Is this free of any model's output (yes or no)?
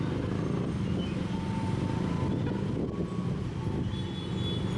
yes